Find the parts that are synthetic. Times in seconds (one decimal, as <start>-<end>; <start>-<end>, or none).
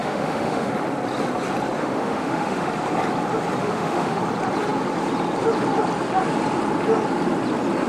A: 0.0-0.7; 1.8-2.7; 3.6-4.2